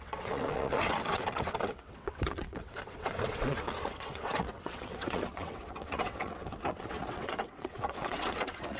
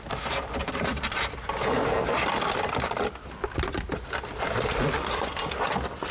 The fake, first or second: first